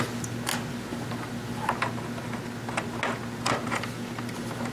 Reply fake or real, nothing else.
real